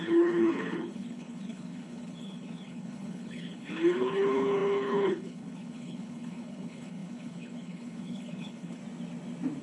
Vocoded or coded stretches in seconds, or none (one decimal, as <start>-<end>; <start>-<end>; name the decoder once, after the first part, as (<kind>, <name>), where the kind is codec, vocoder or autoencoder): 0.0-8.8 (codec, HILCodec)